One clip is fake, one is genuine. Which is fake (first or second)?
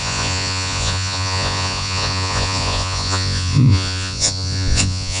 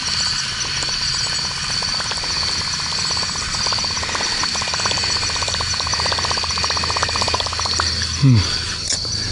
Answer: first